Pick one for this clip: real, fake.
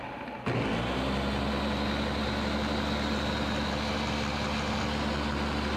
real